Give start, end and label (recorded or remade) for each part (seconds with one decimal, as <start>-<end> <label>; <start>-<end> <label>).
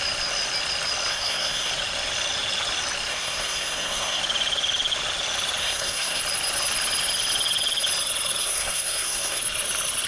0.0-1.1 recorded; 1.1-1.7 remade; 1.7-3.1 recorded; 3.1-4.2 remade; 4.2-5.6 recorded; 5.6-6.2 remade; 6.2-8.4 recorded; 8.4-9.4 remade; 9.4-10.1 recorded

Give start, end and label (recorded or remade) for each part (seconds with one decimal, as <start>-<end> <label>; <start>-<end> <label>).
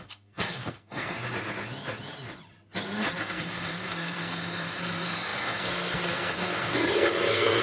0.0-1.2 remade; 1.2-3.2 recorded; 3.2-7.6 remade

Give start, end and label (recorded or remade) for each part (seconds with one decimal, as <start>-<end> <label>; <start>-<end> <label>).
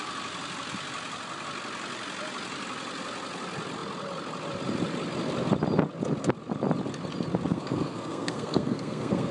0.0-7.5 recorded; 7.5-9.3 remade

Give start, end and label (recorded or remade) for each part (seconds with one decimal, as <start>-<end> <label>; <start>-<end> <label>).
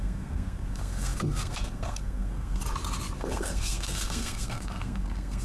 0.0-2.6 remade; 2.6-3.2 recorded; 3.2-5.4 remade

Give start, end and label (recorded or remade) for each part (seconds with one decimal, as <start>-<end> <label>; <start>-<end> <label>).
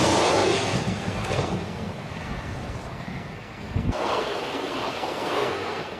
0.0-6.0 remade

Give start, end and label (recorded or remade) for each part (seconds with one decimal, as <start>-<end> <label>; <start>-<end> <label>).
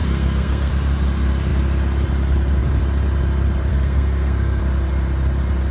0.0-0.7 remade; 0.7-3.7 recorded; 3.7-4.6 remade; 4.6-5.7 recorded